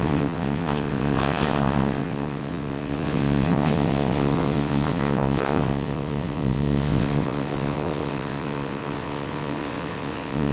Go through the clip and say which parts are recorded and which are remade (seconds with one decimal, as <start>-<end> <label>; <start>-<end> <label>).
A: 0.0-10.5 remade